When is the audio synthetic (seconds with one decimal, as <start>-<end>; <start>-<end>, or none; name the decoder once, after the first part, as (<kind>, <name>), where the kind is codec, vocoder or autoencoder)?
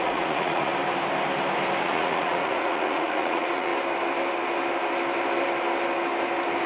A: 0.0-0.7 (vocoder, Vocos); 1.8-3.7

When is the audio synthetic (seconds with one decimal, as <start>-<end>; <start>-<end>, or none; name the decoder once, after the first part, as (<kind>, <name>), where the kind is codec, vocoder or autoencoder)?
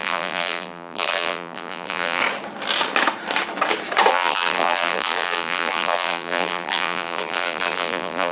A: 0.0-2.2 (vocoder, BigVGAN v2); 4.1-8.3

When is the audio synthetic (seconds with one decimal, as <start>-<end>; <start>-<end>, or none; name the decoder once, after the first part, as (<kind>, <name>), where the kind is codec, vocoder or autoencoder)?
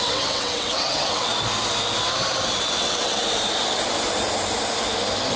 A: 0.0-1.3 (vocoder, WaveNeXt); 2.8-3.2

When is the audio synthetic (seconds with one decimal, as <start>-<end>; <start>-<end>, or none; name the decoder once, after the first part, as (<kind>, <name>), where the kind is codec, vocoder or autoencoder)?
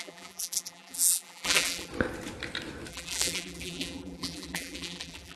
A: 0.0-1.9 (vocoder, BigVGAN v2); 2.9-5.4